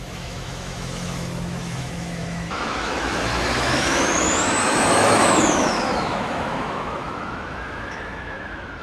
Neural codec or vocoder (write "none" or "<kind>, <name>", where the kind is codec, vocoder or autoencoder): autoencoder, DAC-VAE